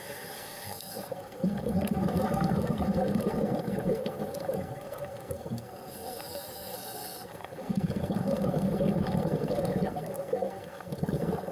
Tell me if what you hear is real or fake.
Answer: fake